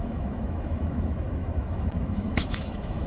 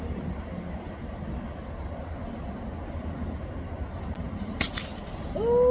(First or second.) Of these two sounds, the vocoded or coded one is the first